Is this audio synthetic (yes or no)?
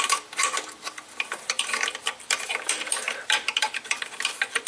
yes